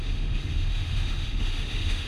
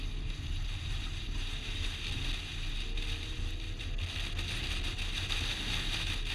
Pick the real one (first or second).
second